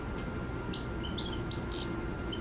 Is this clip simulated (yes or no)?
no